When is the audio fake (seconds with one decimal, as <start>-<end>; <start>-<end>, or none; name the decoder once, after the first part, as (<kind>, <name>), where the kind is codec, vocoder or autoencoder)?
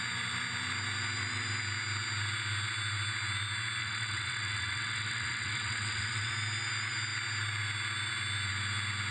3.8-6.3 (vocoder, WaveNeXt)